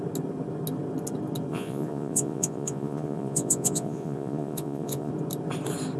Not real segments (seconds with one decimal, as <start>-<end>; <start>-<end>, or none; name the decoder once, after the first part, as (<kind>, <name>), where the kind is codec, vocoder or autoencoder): 1.5-5.1 (vocoder, Vocos)